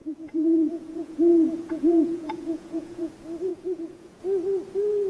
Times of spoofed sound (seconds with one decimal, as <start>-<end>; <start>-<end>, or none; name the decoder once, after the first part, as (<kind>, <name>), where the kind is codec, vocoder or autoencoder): 0.0-3.1 (vocoder, Vocos); 3.5-4.2